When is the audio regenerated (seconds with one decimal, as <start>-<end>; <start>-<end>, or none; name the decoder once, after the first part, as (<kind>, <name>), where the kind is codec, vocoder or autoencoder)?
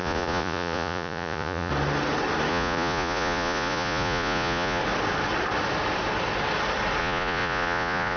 0.0-1.7 (vocoder, Vocos); 2.5-4.8; 7.0-8.2